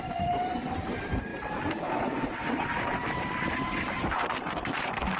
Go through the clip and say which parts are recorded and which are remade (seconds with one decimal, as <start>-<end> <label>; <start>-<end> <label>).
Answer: 0.0-5.2 remade